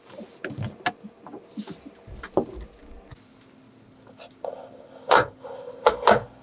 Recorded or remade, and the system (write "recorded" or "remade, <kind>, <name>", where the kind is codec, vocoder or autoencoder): recorded